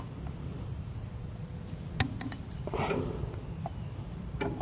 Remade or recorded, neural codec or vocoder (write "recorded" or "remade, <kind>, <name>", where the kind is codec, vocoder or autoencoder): recorded